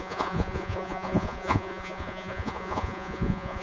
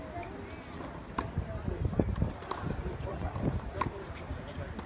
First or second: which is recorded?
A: second